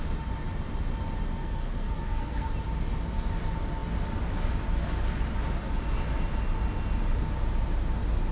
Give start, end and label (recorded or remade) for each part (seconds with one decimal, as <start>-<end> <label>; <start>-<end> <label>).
0.0-1.4 recorded; 1.4-2.5 remade; 2.5-8.3 recorded